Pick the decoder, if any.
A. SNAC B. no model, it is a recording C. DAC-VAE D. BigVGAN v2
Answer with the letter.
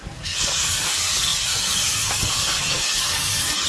A